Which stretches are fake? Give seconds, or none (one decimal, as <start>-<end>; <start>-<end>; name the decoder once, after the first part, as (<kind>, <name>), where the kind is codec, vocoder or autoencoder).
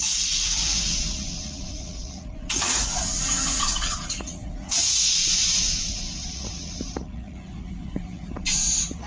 0.0-9.1 (vocoder, Vocos)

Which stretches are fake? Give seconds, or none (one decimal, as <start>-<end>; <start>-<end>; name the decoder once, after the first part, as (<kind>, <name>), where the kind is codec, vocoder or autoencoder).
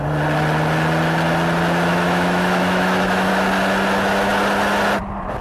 1.9-3.3 (autoencoder, DAC-VAE)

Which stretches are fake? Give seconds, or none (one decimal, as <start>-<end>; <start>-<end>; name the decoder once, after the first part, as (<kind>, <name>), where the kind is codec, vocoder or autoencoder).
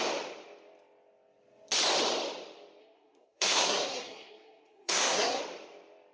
2.8-5.4 (codec, SNAC)